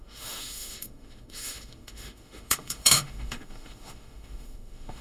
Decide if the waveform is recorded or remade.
remade